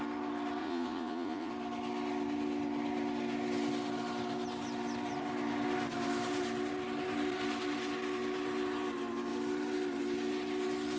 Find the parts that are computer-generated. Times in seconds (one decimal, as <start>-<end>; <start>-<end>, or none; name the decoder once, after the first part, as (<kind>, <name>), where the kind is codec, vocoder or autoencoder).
0.6-1.5 (vocoder, Vocos)